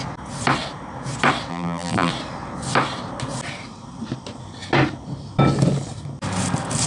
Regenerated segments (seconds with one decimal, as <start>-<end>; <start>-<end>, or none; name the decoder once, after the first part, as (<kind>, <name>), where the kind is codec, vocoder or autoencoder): 1.5-2.1 (vocoder, BigVGAN v2)